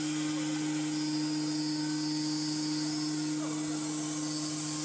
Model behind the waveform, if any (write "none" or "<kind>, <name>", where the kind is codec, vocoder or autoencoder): none